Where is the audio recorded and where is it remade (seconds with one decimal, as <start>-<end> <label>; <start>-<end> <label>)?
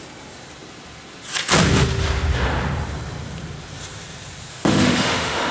0.0-4.5 recorded; 4.5-5.5 remade